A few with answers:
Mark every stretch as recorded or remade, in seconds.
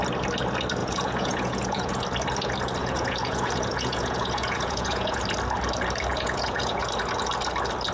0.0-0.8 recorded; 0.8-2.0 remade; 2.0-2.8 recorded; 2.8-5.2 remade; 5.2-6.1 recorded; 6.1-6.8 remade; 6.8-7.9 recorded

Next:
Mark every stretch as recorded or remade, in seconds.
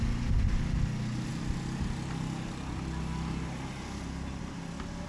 0.0-5.1 recorded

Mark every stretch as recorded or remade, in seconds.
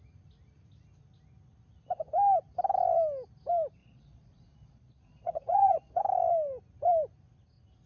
0.0-3.8 recorded; 3.8-6.0 remade; 6.0-7.9 recorded